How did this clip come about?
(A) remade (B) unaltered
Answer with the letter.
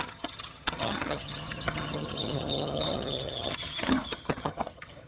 A